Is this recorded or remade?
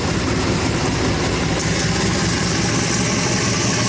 recorded